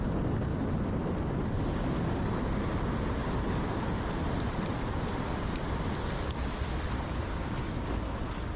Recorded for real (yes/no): yes